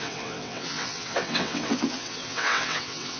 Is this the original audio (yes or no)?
no